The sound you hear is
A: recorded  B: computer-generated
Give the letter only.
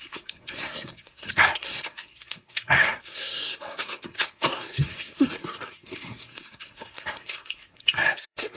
B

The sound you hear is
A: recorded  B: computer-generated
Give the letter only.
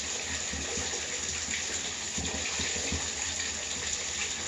A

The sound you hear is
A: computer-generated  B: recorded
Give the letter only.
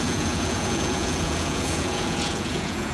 A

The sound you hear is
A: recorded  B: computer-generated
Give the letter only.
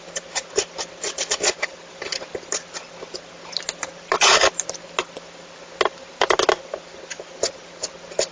A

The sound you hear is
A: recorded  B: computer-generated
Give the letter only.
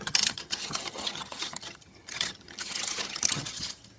B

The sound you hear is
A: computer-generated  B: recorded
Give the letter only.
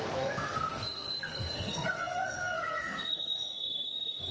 A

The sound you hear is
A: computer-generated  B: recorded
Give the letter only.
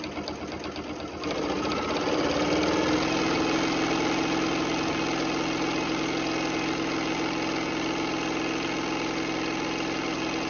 B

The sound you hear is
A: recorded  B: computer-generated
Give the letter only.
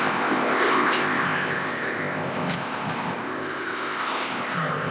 B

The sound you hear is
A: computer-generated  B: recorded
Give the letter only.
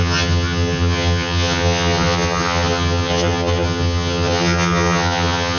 A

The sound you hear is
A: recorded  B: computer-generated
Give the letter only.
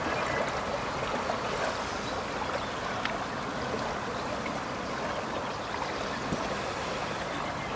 A